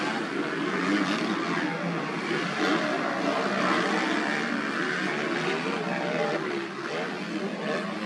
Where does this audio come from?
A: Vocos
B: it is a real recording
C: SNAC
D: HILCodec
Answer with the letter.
B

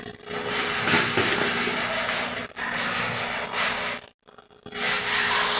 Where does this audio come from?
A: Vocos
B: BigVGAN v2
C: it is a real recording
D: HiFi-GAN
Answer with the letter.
C